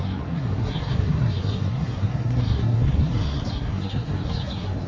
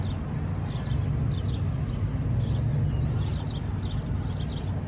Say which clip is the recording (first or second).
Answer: second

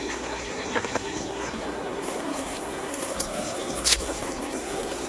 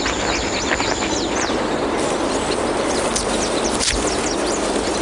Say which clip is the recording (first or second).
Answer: second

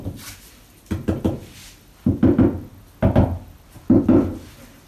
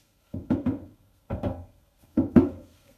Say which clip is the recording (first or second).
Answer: first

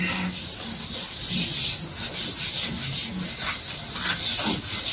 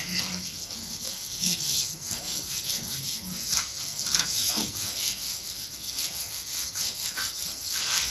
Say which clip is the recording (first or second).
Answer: first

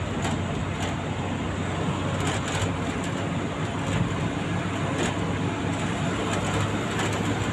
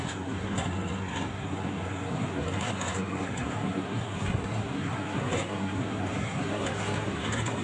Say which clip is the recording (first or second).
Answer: first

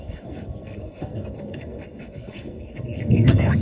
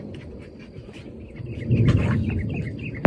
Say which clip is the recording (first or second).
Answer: second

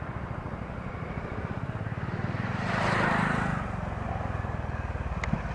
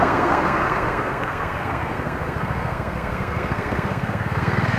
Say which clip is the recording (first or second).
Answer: first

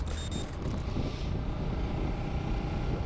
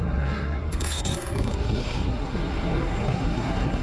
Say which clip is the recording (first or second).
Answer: first